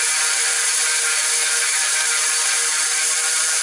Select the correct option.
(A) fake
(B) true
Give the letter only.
A